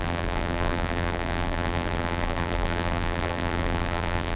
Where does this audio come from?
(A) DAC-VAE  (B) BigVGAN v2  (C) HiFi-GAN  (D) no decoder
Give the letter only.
B